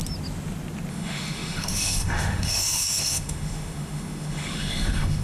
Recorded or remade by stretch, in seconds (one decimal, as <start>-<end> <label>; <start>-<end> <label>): 0.0-0.9 recorded; 0.9-5.2 remade